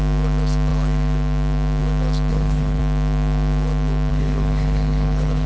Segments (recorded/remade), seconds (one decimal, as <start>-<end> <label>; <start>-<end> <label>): 0.0-2.3 recorded; 2.3-2.8 remade; 2.8-4.1 recorded; 4.1-5.5 remade